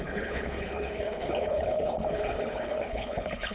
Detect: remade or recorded remade